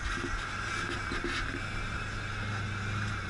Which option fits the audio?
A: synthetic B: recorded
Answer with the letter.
B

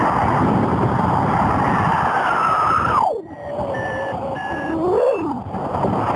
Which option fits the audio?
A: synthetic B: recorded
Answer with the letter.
B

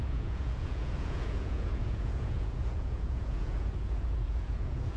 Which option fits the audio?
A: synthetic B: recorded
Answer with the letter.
A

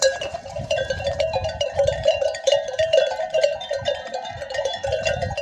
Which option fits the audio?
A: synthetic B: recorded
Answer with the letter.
A